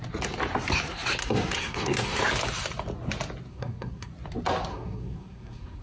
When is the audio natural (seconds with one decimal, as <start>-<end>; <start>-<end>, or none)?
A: 0.0-1.2; 2.2-3.5; 4.1-4.7